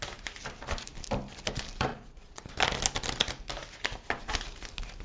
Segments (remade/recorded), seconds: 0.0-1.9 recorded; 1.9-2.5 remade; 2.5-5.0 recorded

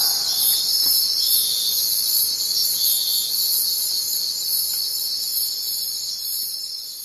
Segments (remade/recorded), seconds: 0.0-2.6 remade; 2.6-5.2 recorded; 5.2-7.0 remade

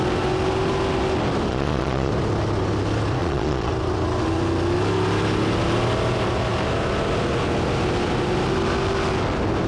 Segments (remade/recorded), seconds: 0.0-1.5 recorded; 1.5-2.1 remade; 2.1-3.2 recorded; 3.2-3.7 remade; 3.7-9.7 recorded

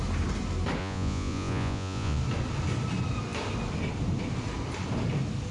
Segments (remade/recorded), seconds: 0.0-0.8 recorded; 0.8-2.2 remade; 2.2-5.5 recorded

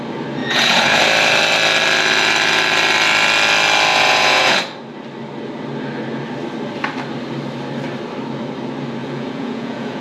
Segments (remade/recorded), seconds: 0.0-0.4 recorded; 0.4-1.0 remade; 1.0-3.9 recorded; 3.9-4.6 remade; 4.6-9.0 recorded; 9.0-10.0 remade

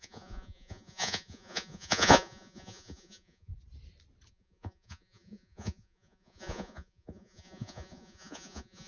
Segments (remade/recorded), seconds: 0.0-3.5 remade; 3.5-4.3 recorded; 4.3-8.9 remade